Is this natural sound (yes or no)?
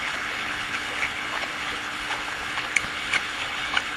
no